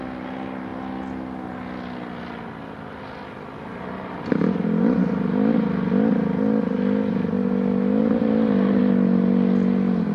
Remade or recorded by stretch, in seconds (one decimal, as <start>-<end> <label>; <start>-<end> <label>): 0.0-8.0 recorded; 8.0-8.8 remade; 8.8-10.1 recorded